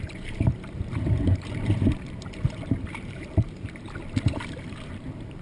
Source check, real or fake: fake